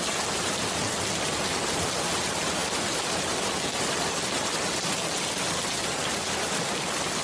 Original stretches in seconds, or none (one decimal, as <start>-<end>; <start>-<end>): 0.0-7.2